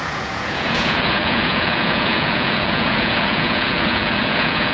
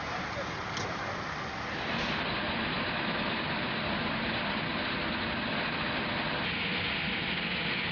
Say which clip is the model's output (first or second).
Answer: first